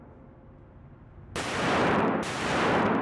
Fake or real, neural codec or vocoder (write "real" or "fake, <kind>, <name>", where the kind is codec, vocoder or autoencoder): real